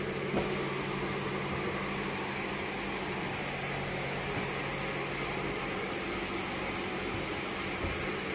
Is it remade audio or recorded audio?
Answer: recorded